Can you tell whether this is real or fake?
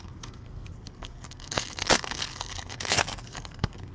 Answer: fake